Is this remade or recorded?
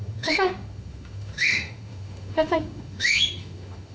remade